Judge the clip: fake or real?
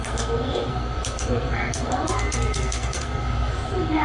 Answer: fake